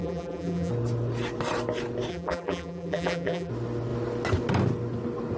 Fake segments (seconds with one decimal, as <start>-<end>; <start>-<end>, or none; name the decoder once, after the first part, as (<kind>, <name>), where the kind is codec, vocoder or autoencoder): 0.0-0.7 (vocoder, BigVGAN v2); 2.1-3.5